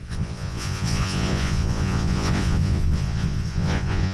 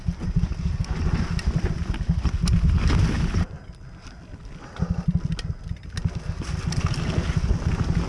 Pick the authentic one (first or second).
second